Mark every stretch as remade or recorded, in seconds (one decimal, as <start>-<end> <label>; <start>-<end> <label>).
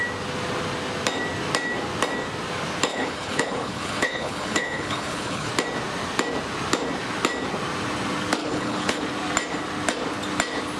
0.0-2.9 recorded; 2.9-5.5 remade; 5.5-8.4 recorded; 8.4-9.0 remade; 9.0-10.8 recorded